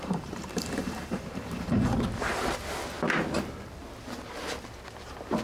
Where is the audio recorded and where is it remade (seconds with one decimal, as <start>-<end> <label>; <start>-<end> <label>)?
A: 0.0-1.9 remade; 1.9-5.4 recorded